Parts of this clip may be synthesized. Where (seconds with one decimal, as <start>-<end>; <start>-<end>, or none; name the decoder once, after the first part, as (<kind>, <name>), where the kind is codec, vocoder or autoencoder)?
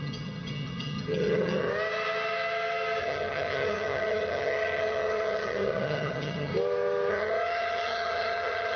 0.0-1.7 (vocoder, HiFi-GAN); 3.0-6.5; 7.1-8.8